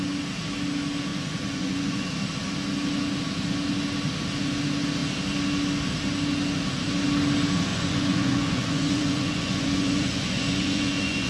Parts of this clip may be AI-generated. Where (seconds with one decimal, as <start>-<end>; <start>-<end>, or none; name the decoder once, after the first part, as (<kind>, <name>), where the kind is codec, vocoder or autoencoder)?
1.1-2.0 (vocoder, Vocos); 7.7-11.3